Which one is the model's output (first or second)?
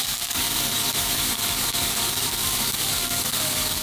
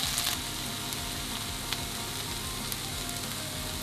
first